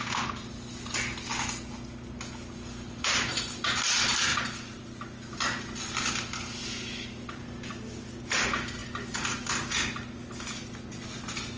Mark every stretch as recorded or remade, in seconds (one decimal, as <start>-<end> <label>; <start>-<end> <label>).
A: 0.0-11.6 recorded